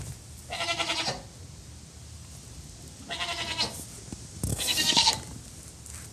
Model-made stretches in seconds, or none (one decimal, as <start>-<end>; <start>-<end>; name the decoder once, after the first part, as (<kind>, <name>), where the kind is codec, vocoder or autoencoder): 4.5-5.1 (codec, SNAC)